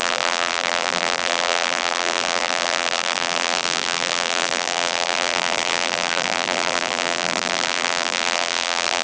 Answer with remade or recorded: remade